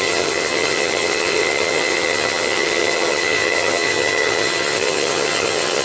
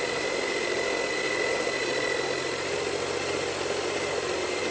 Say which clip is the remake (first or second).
first